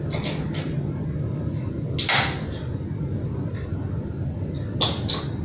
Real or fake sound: real